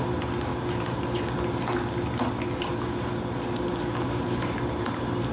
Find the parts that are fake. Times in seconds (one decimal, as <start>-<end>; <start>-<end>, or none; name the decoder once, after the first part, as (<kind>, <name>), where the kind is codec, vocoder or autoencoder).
none